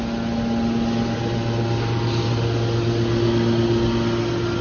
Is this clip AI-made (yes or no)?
no